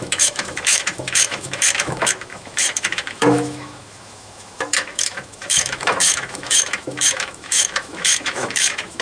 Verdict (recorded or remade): remade